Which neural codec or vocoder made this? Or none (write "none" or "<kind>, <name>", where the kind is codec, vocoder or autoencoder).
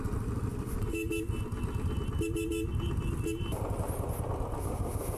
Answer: none